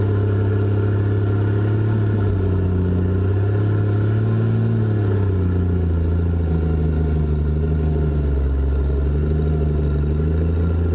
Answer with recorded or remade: recorded